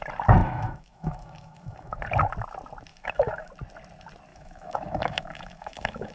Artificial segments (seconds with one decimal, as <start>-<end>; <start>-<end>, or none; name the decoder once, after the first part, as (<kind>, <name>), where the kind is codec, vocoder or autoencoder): 0.4-2.0 (autoencoder, DAC-VAE); 2.9-3.5; 4.3-6.1